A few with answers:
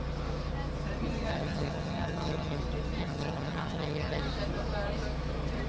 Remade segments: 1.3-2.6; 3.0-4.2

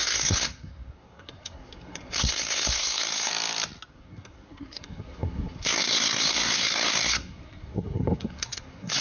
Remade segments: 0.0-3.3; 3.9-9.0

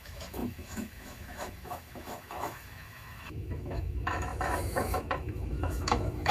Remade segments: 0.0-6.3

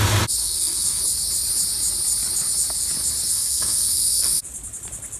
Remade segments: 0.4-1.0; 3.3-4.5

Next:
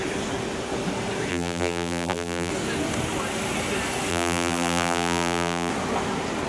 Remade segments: 1.3-2.5; 4.1-5.7

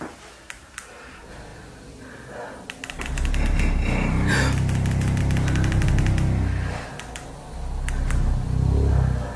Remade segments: none

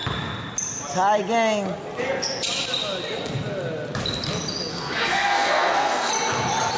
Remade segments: 4.7-6.1

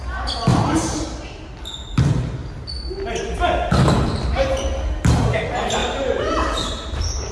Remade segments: 0.5-1.4; 5.8-7.3